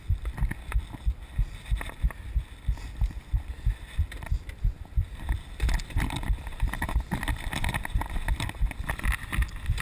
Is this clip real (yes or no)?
yes